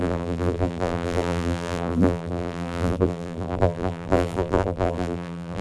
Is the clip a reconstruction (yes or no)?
yes